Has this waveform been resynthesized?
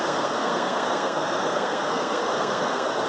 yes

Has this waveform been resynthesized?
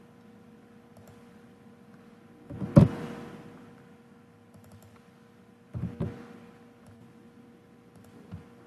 no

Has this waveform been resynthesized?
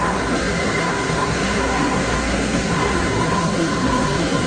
yes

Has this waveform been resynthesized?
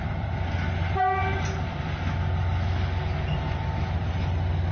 no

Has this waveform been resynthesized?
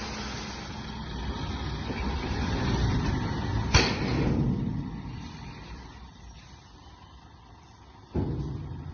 no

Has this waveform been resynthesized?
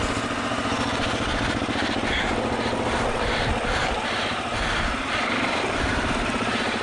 no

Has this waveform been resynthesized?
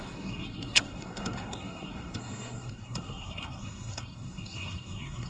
yes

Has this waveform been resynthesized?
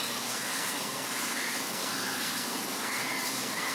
yes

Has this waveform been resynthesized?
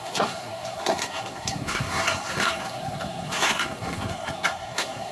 yes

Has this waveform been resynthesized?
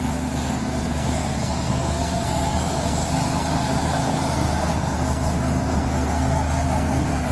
yes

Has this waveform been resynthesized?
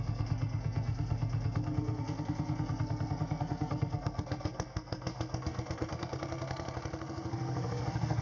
yes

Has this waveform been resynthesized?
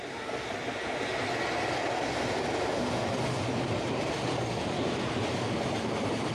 no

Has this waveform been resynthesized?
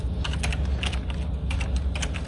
no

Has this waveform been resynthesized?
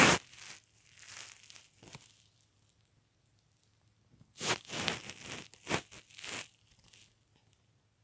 no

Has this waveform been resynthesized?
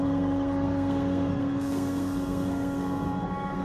yes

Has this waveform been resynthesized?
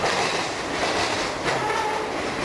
no